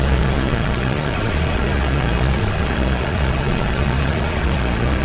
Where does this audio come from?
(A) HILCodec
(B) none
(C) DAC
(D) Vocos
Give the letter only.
D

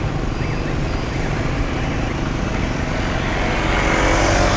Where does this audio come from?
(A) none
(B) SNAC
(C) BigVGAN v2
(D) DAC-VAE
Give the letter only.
A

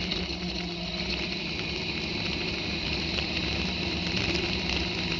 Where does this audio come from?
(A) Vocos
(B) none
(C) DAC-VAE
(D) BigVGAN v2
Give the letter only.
B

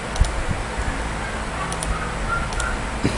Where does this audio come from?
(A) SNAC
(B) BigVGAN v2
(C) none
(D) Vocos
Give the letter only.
C